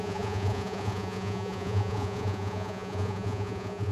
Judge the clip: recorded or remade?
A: remade